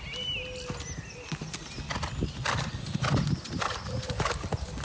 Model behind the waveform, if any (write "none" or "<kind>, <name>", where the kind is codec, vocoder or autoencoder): none